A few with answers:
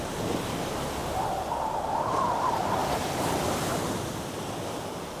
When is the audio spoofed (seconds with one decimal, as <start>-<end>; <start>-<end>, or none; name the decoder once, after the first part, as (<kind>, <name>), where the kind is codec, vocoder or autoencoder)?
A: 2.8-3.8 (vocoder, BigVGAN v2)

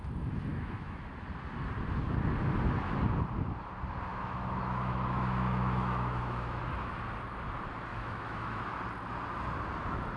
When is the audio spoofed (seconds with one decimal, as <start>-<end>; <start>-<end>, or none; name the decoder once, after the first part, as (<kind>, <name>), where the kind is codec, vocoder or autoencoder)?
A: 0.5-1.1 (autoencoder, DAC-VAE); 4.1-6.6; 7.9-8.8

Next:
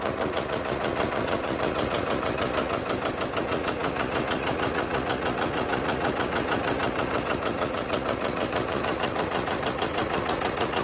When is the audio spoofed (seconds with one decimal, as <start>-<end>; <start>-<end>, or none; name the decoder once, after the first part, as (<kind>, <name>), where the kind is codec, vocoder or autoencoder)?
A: 0.0-2.8 (vocoder, Vocos); 3.4-10.8

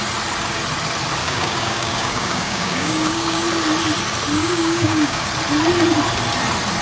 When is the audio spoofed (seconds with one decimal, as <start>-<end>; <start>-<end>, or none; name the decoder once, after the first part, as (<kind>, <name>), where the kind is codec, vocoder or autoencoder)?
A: 1.2-3.4 (codec, DAC); 4.4-5.3

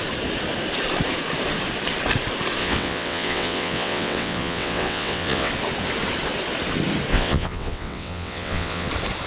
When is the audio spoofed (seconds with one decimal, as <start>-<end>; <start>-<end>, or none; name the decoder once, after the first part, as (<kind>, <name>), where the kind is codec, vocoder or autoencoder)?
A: 2.6-5.5 (vocoder, WaveNeXt); 7.1-8.9